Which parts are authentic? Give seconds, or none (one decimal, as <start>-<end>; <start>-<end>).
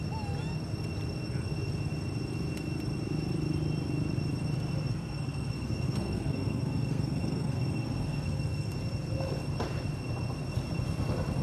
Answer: 0.0-4.9; 8.7-11.4